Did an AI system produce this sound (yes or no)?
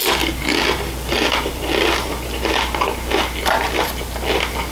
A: no